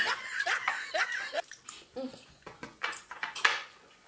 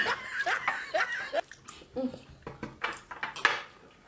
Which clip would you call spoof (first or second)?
first